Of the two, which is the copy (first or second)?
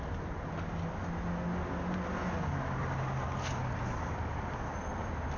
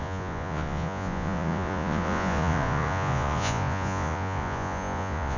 second